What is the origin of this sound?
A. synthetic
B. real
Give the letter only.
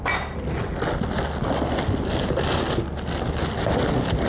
B